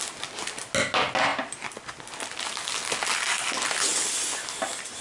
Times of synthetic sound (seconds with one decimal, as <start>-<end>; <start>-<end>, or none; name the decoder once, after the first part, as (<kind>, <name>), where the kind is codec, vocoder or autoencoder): none